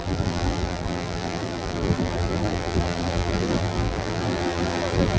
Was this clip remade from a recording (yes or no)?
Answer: yes